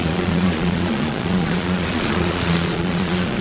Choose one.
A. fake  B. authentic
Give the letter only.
A